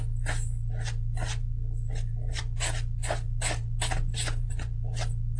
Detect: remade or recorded recorded